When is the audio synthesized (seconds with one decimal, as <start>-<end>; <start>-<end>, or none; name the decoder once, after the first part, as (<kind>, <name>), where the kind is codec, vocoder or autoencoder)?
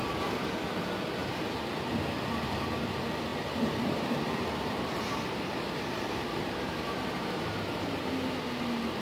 3.3-8.1 (vocoder, BigVGAN v2)